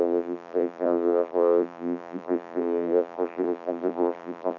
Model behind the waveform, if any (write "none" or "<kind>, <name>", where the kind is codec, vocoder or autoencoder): vocoder, BigVGAN v2